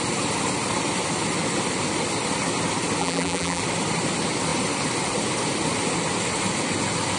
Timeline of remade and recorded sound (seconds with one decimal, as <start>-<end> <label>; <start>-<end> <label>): 0.0-3.0 recorded; 3.0-3.6 remade; 3.6-7.2 recorded